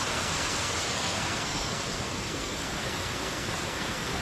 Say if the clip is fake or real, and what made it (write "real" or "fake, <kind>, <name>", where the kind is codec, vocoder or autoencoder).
fake, codec, SNAC